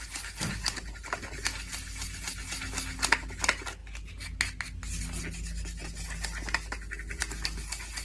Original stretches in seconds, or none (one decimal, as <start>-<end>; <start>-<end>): 0.0-8.0